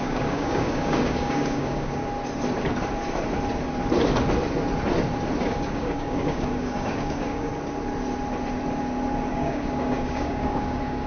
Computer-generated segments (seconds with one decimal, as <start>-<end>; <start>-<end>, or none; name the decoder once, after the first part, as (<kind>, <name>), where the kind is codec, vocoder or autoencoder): 0.0-2.0 (codec, DAC); 5.4-7.5; 9.3-11.1